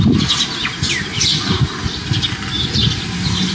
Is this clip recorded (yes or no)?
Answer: yes